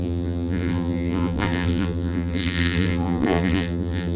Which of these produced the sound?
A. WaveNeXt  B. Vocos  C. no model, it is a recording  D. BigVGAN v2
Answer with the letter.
D